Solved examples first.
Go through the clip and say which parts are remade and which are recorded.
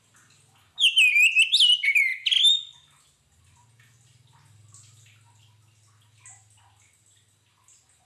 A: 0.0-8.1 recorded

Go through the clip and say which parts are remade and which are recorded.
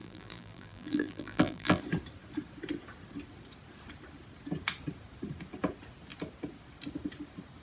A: 0.0-1.8 remade; 1.8-7.6 recorded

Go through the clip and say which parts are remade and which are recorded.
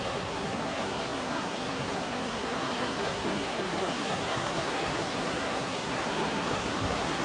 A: 0.0-7.2 remade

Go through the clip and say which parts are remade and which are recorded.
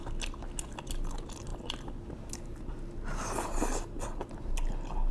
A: 0.0-5.1 recorded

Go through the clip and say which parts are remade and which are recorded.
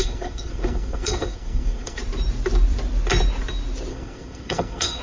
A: 0.0-2.0 remade; 2.0-3.9 recorded; 3.9-5.0 remade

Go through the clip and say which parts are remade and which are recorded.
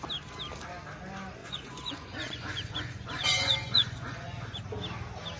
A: 0.0-1.4 recorded; 1.4-4.6 remade; 4.6-5.4 recorded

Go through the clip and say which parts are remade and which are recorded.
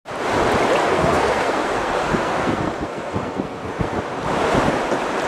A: 0.0-0.8 recorded; 0.8-4.0 remade; 4.0-5.3 recorded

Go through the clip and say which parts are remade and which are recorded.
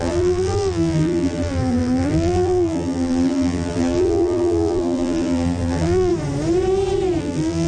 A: 0.0-6.1 remade; 6.1-7.2 recorded; 7.2-7.7 remade